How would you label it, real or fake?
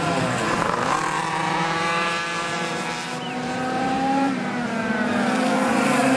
fake